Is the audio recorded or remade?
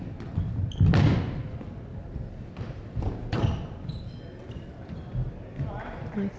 recorded